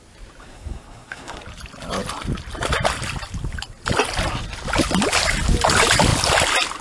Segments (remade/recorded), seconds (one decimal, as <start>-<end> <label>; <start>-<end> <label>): 0.0-0.4 recorded; 0.4-1.4 remade; 1.4-6.8 recorded